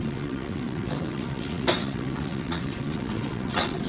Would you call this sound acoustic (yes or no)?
no